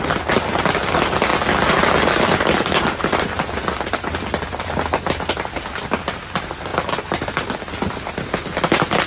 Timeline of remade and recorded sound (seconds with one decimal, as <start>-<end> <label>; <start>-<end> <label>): 0.0-9.1 recorded